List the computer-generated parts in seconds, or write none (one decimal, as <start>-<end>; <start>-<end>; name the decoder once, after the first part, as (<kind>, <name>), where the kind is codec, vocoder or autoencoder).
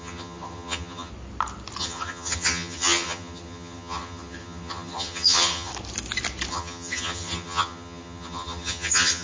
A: 0.0-1.1 (vocoder, HiFi-GAN); 1.8-5.7; 6.5-9.2